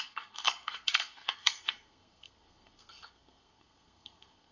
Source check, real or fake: fake